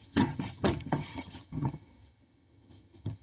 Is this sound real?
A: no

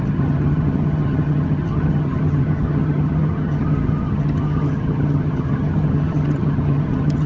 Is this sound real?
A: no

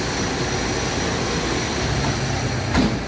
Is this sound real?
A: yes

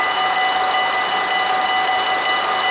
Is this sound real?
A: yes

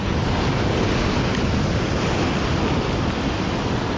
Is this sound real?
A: yes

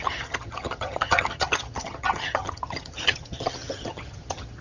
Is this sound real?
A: no